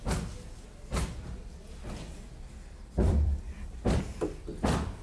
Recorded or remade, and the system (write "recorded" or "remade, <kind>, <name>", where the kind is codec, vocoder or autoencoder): remade, vocoder, BigVGAN v2